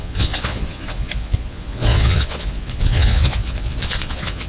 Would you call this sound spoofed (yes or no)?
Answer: yes